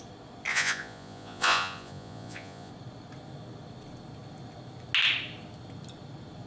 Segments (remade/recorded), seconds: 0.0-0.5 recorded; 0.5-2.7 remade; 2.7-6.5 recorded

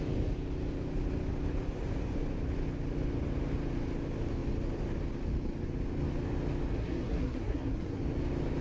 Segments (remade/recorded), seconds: 0.0-6.7 recorded; 6.7-8.0 remade; 8.0-8.6 recorded

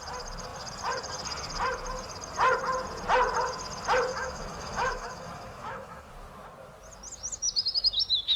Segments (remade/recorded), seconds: 0.0-4.1 recorded; 4.1-6.1 remade; 6.1-8.4 recorded

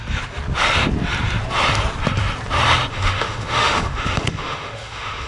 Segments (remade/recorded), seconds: 0.0-2.9 recorded; 2.9-5.3 remade

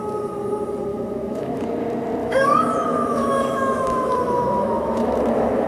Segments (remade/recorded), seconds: 0.0-0.9 recorded; 0.9-1.6 remade; 1.6-2.2 recorded; 2.2-5.7 remade

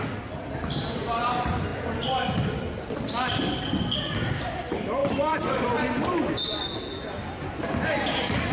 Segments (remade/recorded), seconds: 0.0-5.0 recorded; 5.0-6.3 remade; 6.3-8.5 recorded

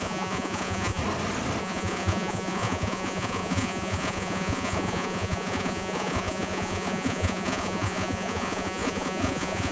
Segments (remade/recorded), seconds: 0.0-1.0 remade; 1.0-1.6 recorded; 1.6-9.7 remade